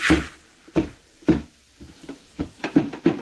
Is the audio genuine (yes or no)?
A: no